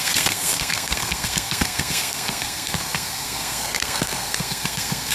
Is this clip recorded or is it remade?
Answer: remade